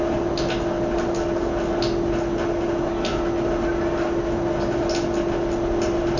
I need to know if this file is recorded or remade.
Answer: recorded